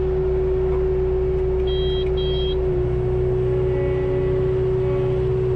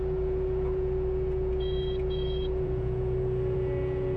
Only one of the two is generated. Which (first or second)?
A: second